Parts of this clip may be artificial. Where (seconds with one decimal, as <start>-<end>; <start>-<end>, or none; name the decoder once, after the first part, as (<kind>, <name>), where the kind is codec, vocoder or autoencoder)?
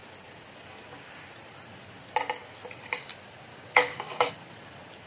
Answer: 3.5-4.3 (codec, DAC)